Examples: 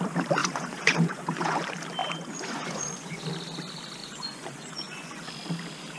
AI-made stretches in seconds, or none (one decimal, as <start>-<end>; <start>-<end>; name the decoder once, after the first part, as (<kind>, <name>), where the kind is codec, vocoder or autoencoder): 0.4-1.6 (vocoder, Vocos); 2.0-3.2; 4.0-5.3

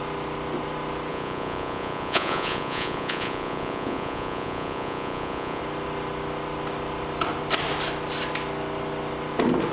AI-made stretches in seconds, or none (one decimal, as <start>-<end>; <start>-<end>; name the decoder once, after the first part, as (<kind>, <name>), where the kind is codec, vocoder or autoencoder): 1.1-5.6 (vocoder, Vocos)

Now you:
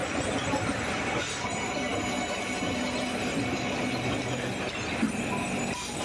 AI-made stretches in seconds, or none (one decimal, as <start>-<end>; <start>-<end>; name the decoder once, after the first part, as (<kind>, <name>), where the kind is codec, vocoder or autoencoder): none

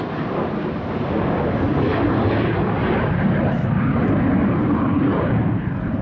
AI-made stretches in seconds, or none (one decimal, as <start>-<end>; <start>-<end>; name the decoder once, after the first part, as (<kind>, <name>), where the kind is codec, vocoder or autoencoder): none

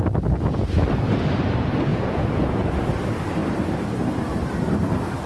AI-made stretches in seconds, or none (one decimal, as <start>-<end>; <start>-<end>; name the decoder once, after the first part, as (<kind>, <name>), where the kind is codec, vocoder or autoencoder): 1.9-2.5 (vocoder, Vocos)

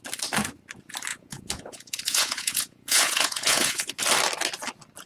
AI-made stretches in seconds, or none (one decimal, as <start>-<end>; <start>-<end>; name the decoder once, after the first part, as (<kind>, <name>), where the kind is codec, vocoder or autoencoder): 1.1-4.0 (vocoder, Vocos)